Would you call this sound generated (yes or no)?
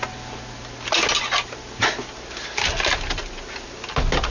no